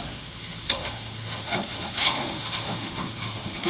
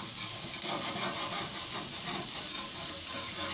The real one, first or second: second